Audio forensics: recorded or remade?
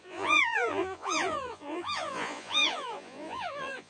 remade